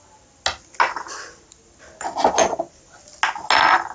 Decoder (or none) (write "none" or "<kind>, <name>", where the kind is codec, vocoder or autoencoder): none